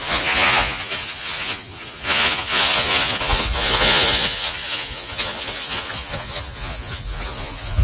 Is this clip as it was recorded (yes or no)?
no